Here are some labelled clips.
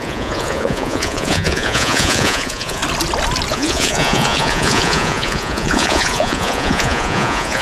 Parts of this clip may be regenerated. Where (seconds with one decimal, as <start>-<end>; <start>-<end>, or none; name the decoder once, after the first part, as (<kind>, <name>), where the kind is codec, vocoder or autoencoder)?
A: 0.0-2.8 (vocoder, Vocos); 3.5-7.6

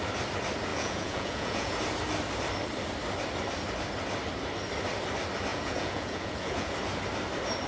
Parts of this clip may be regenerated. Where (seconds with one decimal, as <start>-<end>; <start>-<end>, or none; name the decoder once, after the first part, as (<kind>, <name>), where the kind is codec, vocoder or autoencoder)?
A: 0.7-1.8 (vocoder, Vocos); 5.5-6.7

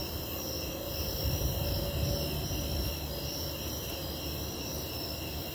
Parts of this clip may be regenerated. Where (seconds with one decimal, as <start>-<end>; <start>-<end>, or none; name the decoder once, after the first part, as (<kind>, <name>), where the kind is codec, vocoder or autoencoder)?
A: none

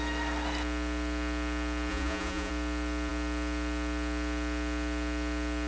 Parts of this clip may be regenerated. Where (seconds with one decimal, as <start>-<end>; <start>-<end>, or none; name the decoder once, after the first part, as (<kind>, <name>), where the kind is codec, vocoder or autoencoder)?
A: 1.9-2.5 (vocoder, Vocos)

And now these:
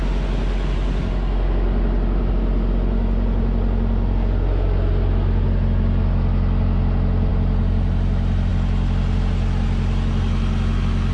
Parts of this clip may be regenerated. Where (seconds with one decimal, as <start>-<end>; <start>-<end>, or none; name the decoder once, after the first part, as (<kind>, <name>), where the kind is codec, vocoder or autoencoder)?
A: none